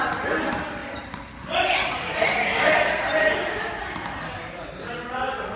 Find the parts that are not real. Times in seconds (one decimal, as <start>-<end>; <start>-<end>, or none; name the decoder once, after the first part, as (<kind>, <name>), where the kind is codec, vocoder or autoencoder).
none